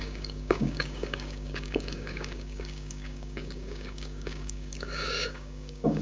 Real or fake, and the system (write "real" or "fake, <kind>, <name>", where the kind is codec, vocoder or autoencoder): fake, codec, DAC